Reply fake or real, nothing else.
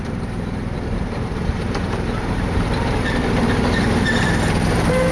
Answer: fake